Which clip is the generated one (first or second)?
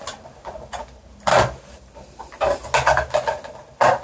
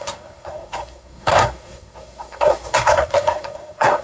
second